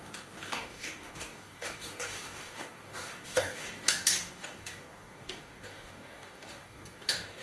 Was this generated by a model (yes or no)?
yes